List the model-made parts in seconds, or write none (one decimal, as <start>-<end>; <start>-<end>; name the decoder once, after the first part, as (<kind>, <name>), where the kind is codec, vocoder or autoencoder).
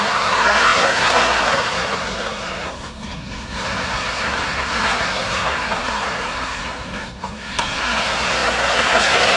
0.0-9.4 (codec, SNAC)